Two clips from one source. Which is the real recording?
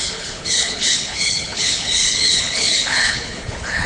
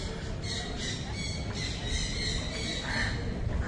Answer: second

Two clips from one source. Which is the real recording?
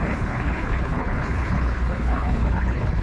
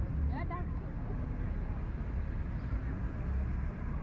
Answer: second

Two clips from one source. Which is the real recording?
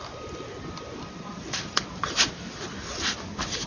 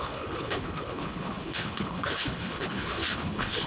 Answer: first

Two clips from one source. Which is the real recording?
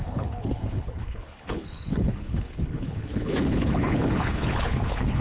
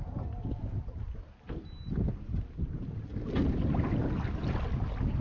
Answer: second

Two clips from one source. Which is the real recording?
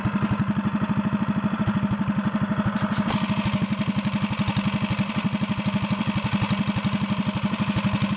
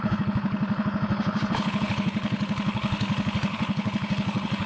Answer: first